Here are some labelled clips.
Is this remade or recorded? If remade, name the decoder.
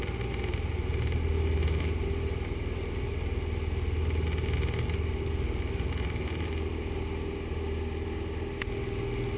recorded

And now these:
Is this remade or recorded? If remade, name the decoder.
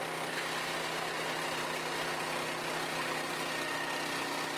recorded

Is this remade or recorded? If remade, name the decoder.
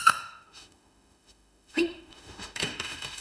remade, autoencoder, DAC-VAE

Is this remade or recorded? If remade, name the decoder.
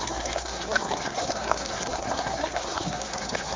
remade, codec, SNAC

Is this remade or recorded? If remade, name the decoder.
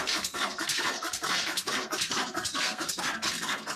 remade, codec, SNAC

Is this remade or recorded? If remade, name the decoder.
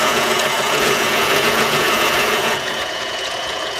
remade, vocoder, Vocos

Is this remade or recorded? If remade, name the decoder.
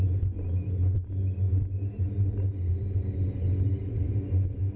recorded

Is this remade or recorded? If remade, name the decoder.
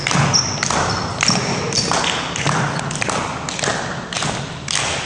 recorded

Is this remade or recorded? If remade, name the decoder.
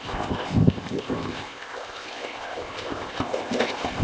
remade, codec, ZipCodec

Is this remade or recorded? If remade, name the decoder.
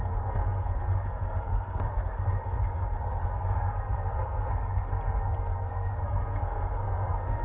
remade, codec, SNAC